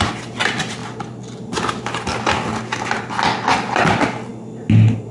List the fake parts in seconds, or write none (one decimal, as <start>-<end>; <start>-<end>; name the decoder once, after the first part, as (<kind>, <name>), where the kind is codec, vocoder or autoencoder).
none